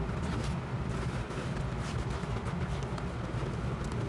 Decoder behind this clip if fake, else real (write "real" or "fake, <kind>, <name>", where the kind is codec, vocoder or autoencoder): real